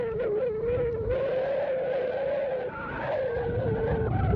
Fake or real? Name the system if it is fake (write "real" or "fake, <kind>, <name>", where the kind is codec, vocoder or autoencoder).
real